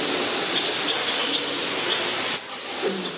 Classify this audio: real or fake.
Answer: real